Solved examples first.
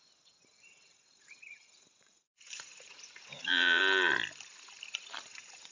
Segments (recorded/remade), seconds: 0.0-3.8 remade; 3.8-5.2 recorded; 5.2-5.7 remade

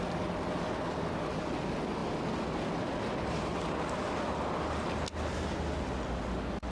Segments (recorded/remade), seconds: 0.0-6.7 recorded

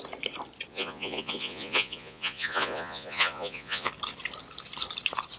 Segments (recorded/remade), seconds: 0.0-0.7 recorded; 0.7-3.9 remade; 3.9-5.4 recorded

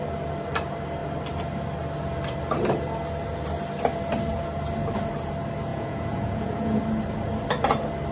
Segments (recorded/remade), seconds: 0.0-5.7 recorded; 5.7-6.8 remade; 6.8-8.1 recorded

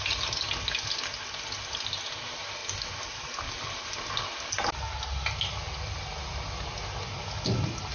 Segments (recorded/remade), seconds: 0.0-7.9 recorded

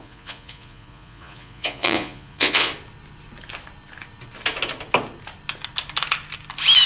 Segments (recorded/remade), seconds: 0.0-2.7 remade; 2.7-6.9 recorded